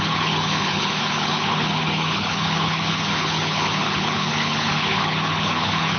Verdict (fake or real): fake